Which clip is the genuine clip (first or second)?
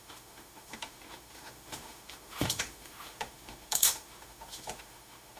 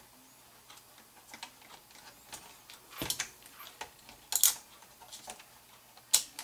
second